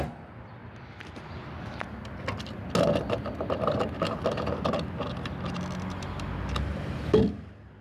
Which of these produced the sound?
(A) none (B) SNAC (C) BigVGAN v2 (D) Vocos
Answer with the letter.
A